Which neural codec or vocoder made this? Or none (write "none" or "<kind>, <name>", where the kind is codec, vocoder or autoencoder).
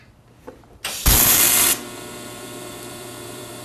vocoder, BigVGAN v2